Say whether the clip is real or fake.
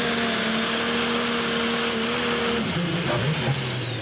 real